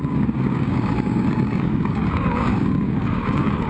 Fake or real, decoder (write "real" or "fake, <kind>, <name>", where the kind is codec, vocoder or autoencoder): fake, codec, DAC